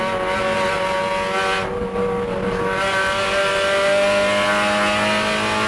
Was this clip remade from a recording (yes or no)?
no